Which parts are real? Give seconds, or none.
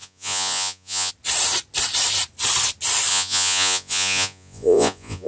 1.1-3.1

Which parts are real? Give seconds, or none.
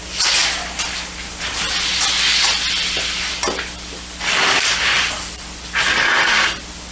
0.4-1.4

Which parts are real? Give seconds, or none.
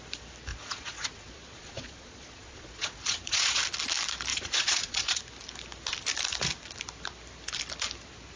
0.0-0.5; 3.6-4.3; 5.2-8.4